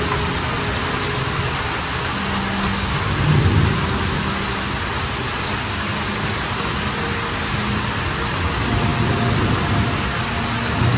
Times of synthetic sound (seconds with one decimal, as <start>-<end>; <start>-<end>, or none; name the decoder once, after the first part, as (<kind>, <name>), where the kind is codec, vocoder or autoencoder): none

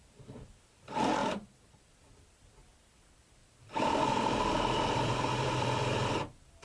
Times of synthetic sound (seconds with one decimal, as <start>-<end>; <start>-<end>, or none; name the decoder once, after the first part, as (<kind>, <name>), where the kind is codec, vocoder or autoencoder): 0.0-1.2 (vocoder, BigVGAN v2); 1.9-6.6

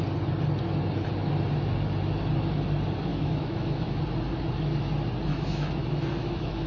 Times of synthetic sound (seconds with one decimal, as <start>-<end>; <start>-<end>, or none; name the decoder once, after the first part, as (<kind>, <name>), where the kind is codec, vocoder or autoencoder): 3.1-4.0 (autoencoder, DAC-VAE); 5.3-6.7

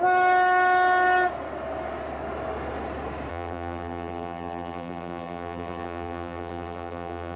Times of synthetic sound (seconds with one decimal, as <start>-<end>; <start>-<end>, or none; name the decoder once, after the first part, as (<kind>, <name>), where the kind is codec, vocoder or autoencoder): 3.3-7.4 (vocoder, BigVGAN v2)

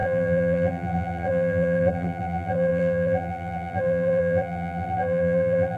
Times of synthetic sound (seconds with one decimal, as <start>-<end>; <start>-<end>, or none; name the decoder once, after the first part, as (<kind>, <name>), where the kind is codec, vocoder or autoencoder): 0.0-5.8 (vocoder, BigVGAN v2)

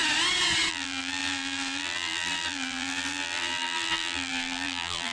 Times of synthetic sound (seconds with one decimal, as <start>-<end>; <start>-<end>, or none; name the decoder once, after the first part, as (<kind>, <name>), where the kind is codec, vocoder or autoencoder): 0.7-5.1 (vocoder, BigVGAN v2)

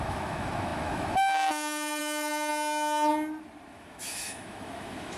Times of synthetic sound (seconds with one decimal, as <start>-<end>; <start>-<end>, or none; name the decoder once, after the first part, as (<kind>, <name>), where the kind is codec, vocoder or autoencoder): 0.0-2.5 (autoencoder, DAC-VAE); 3.7-5.2

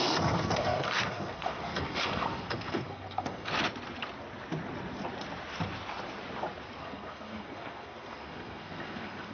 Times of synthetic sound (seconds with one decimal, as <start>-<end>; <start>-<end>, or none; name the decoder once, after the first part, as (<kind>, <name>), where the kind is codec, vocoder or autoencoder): 0.0-3.5 (codec, SNAC); 6.8-9.3